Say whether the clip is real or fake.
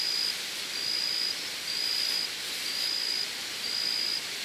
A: fake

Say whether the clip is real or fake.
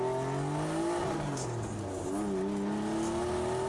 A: real